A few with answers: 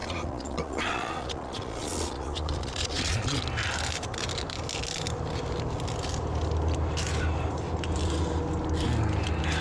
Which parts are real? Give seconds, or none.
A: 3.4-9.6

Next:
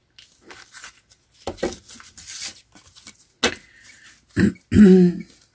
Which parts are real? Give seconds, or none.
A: 0.0-5.5